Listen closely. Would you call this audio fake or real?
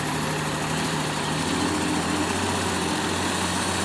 real